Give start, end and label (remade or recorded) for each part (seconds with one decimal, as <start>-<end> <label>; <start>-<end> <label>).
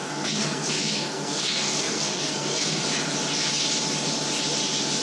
0.0-2.8 remade; 2.8-5.0 recorded